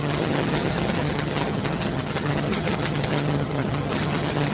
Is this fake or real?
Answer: fake